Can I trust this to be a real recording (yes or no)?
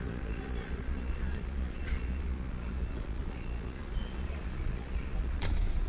no